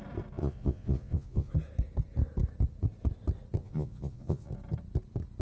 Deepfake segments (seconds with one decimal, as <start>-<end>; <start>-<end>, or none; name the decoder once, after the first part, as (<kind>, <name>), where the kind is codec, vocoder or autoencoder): 0.4-1.5 (vocoder, Vocos); 3.6-4.5